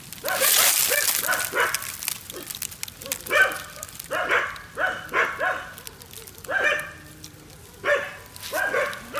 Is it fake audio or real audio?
real